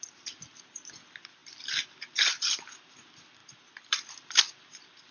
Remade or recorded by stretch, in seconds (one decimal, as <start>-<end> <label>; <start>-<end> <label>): 0.0-5.1 remade